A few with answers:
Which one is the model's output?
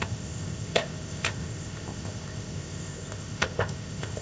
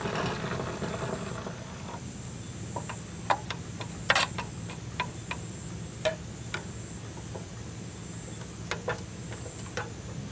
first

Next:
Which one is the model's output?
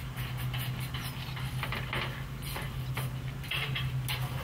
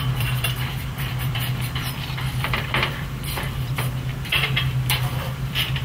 second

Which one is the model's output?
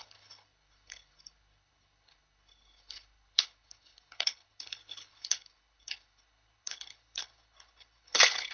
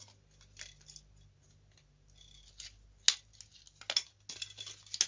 first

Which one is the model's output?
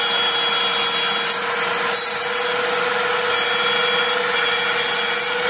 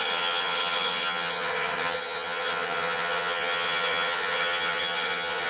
second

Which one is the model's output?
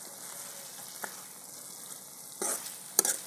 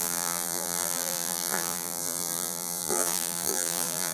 second